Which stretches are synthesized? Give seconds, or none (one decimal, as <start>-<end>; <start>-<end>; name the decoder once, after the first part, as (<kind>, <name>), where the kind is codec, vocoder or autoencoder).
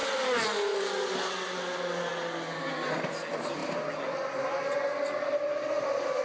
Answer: none